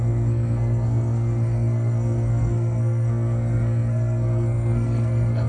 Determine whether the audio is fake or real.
fake